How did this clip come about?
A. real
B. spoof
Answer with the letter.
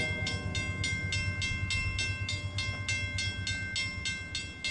A